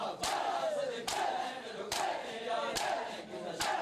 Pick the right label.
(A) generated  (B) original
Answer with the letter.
A